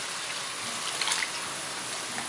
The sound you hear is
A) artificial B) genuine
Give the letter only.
B